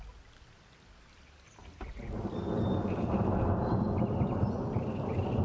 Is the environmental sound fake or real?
real